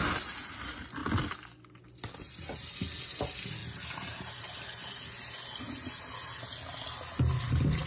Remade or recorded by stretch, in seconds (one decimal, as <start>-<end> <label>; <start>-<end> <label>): 0.0-7.9 recorded

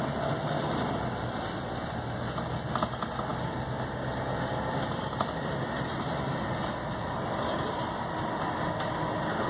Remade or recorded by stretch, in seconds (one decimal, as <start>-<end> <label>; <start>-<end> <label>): 0.0-9.5 recorded

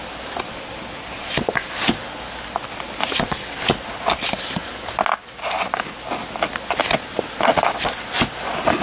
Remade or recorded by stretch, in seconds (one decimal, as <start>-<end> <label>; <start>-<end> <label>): 0.0-8.8 recorded

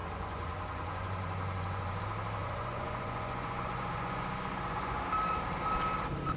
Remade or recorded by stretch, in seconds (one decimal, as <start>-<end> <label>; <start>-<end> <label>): 0.0-2.0 remade; 2.0-2.4 recorded; 2.4-5.0 remade; 5.0-6.4 recorded

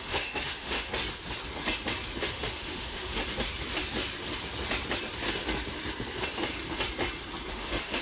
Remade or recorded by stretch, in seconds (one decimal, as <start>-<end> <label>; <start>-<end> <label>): 0.0-0.9 remade; 0.9-2.2 recorded; 2.2-3.2 remade; 3.2-7.5 recorded; 7.5-8.0 remade

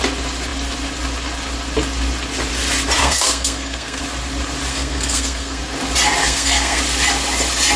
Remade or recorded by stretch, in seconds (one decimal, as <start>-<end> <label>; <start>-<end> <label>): 0.0-3.0 recorded; 3.0-4.0 remade; 4.0-4.7 recorded; 4.7-5.6 remade; 5.6-6.2 recorded; 6.2-6.8 remade; 6.8-7.8 recorded

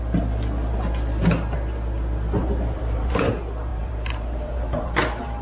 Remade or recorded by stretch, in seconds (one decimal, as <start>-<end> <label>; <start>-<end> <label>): 0.0-2.4 recorded; 2.4-3.3 remade; 3.3-3.7 recorded; 3.7-5.4 remade

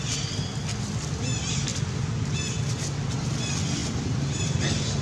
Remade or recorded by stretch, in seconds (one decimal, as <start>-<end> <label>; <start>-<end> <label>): 0.0-3.8 recorded; 3.8-4.4 remade; 4.4-5.0 recorded